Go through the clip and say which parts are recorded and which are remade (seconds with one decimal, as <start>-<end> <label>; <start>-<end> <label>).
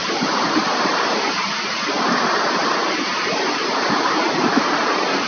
0.0-1.1 remade; 1.1-2.6 recorded; 2.6-4.5 remade; 4.5-5.3 recorded